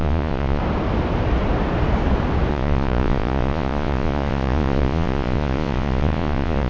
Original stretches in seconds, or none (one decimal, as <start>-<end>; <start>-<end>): 0.6-2.5